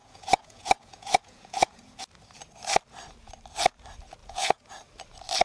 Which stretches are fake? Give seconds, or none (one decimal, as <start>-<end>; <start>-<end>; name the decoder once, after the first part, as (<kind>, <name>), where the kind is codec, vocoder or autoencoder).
0.0-2.0 (vocoder, Vocos); 4.2-4.7